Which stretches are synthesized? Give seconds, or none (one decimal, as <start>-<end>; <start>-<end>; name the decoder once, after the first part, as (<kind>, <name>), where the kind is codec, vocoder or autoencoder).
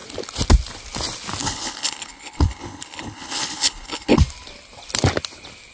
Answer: 1.4-4.2 (codec, HILCodec)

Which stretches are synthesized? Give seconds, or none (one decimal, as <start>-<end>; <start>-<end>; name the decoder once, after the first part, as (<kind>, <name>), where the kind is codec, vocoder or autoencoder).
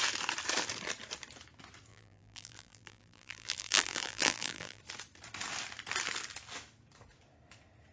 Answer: 1.9-4.8 (vocoder, BigVGAN v2)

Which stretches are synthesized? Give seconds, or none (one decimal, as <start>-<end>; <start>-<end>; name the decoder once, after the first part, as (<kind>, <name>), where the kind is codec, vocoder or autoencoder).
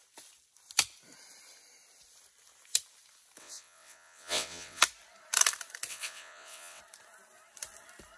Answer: 3.4-4.8 (vocoder, WaveNeXt); 5.9-6.8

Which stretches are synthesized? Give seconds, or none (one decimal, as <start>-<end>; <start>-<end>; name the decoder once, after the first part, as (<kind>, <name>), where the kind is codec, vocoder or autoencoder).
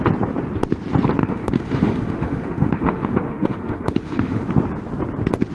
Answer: 1.2-4.5 (autoencoder, DAC-VAE)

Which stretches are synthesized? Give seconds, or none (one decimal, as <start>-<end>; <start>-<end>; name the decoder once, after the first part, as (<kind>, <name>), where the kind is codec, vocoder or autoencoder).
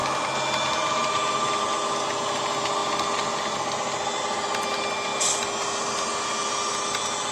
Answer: none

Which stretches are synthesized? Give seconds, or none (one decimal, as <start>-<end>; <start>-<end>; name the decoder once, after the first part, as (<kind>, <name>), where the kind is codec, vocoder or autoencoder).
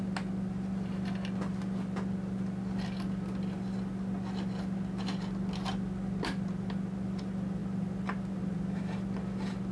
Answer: none